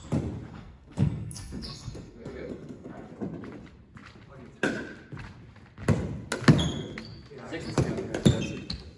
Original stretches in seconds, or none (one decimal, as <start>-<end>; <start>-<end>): 0.0-0.5; 3.1-9.0